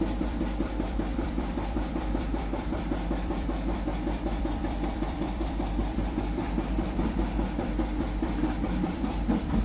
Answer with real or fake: fake